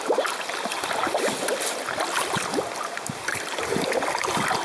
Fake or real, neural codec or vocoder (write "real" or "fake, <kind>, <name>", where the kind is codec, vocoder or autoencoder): real